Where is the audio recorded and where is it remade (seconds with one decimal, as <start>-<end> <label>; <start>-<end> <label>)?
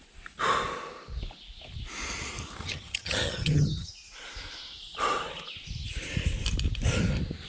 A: 0.0-2.6 recorded; 2.6-3.9 remade; 3.9-7.5 recorded